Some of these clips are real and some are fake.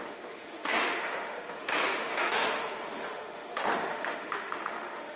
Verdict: fake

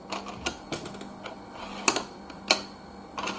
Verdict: real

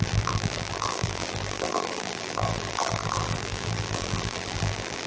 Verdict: fake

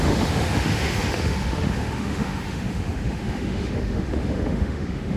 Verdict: fake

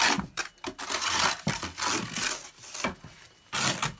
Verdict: real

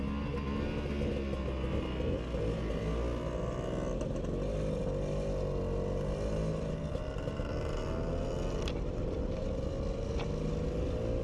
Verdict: real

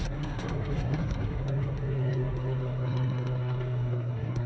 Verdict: fake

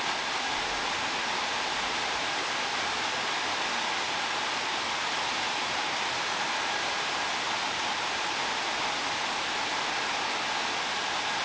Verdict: real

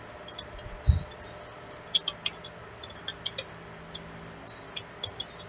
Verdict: real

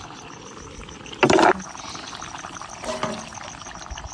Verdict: real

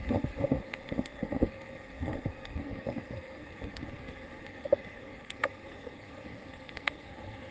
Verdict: fake